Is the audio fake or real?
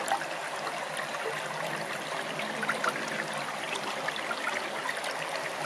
real